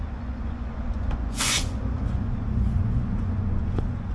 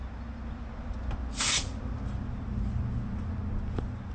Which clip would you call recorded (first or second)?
second